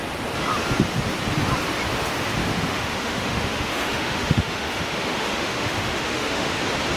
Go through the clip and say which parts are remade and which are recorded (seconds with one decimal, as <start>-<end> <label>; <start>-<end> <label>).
0.0-2.4 recorded; 2.4-6.6 remade; 6.6-7.0 recorded